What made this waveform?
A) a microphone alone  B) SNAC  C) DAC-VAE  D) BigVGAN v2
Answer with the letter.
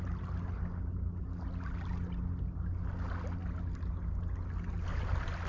A